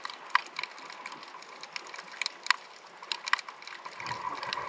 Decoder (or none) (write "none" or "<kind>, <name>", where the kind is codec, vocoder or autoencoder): none